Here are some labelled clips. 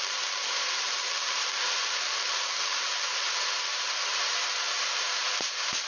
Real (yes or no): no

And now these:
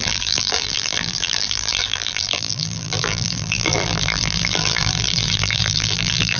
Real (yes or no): no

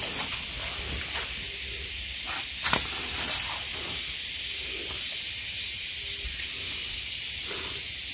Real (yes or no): yes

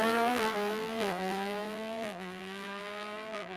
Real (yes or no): no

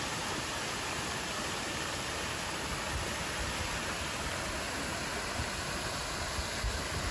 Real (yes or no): yes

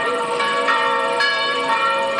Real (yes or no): no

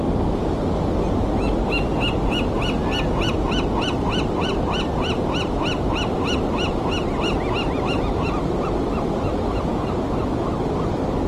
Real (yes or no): yes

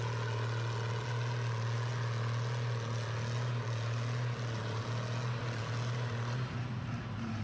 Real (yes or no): yes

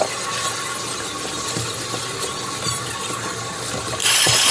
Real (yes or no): yes